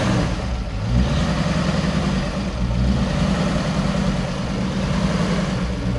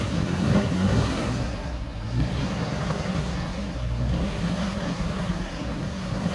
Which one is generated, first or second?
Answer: second